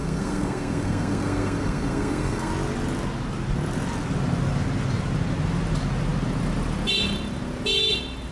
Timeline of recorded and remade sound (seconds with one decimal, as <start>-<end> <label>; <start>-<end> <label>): 0.0-2.5 remade; 2.5-8.3 recorded